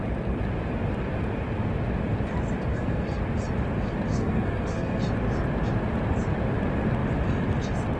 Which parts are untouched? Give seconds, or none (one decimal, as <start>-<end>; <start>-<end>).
0.0-2.7; 3.2-4.1; 5.0-8.0